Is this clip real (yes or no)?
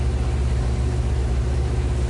yes